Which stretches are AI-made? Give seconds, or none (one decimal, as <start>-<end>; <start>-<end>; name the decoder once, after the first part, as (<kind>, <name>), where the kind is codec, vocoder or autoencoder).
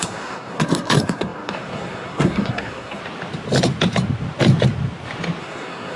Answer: 0.0-3.0 (codec, SNAC); 5.4-6.0